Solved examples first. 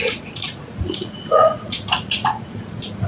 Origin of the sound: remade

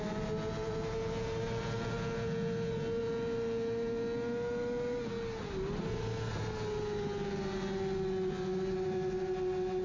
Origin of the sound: recorded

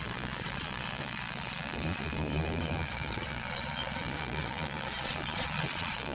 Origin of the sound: remade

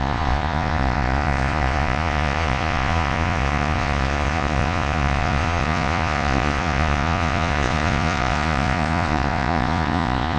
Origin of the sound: remade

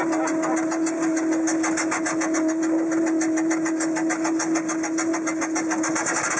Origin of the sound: recorded